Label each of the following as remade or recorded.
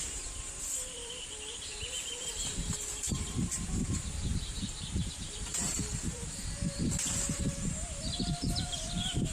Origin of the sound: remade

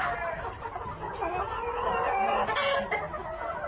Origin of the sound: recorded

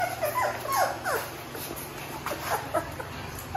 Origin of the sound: recorded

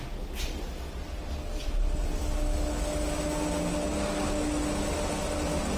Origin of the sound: recorded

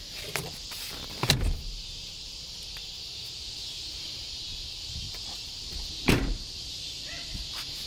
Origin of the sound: remade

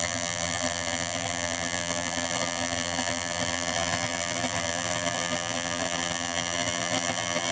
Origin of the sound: remade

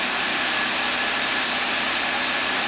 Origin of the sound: remade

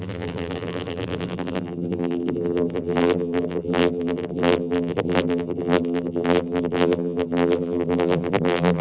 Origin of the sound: remade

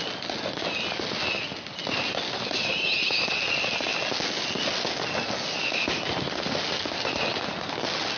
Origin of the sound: recorded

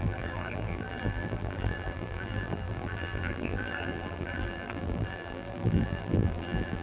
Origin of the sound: remade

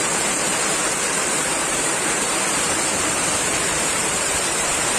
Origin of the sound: remade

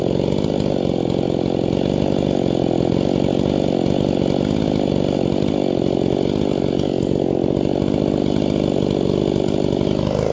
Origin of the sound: recorded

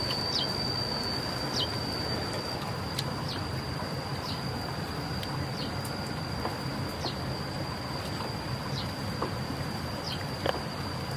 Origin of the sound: remade